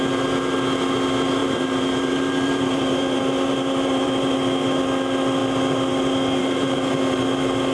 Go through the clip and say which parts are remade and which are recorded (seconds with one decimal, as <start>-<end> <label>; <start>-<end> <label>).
0.0-1.4 recorded; 1.4-4.3 remade; 4.3-6.4 recorded; 6.4-7.2 remade; 7.2-7.7 recorded